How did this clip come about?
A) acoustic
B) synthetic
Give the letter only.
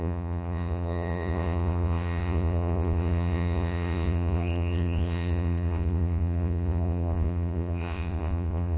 B